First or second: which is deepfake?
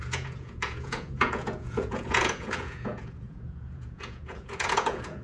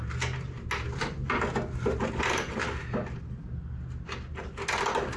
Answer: first